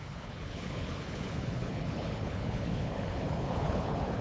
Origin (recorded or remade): remade